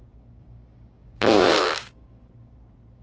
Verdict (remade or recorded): remade